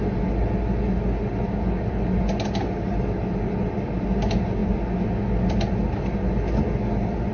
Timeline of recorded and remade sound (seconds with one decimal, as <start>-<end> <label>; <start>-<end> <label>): 0.0-7.3 recorded